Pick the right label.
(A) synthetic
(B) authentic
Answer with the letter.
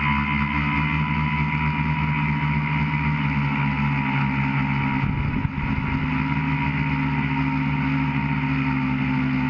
B